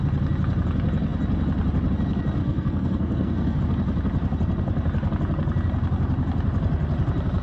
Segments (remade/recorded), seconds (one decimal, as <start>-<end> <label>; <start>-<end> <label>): 0.0-2.4 recorded; 2.4-3.6 remade; 3.6-7.4 recorded